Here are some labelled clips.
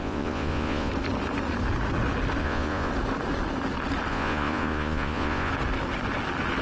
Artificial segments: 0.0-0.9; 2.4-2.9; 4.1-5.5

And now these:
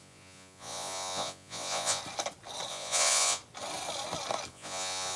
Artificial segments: 0.0-2.0; 2.7-3.4; 4.5-5.2

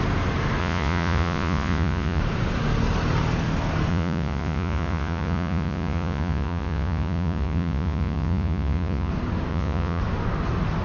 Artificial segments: 0.6-2.2; 3.9-9.1; 9.5-10.0

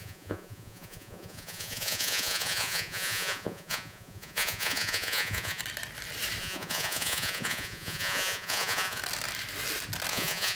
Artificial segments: 0.0-5.6; 6.4-9.0; 10.1-10.6

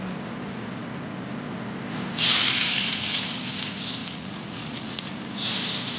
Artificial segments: 4.0-5.1

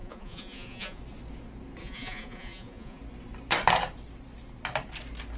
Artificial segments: 0.0-1.0; 1.8-3.0

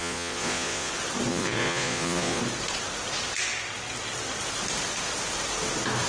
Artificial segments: 0.0-0.9; 1.3-2.4

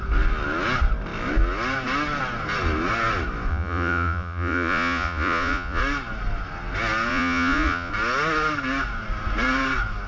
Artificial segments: 3.5-5.8; 7.1-7.9